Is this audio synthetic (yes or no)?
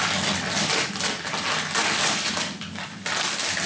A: yes